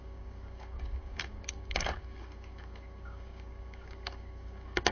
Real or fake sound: fake